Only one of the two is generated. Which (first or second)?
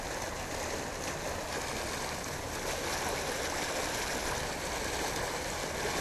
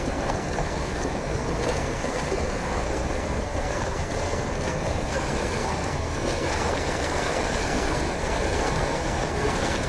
second